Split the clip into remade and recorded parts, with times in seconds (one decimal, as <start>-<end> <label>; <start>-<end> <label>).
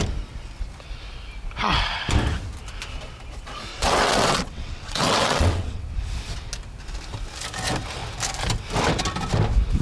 0.0-3.7 recorded; 3.7-5.8 remade; 5.8-9.8 recorded